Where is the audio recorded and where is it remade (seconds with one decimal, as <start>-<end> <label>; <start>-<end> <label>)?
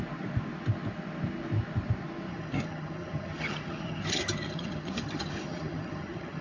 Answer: 0.0-2.3 recorded; 2.3-6.4 remade